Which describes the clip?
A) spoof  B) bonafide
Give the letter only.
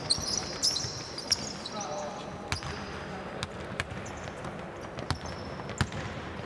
B